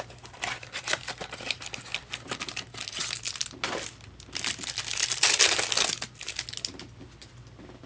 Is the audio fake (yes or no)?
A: no